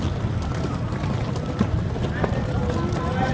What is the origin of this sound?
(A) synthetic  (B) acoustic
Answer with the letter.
B